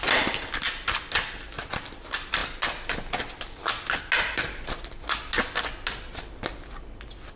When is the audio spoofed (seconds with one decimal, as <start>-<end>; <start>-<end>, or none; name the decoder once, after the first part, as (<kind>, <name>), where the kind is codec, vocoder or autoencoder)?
none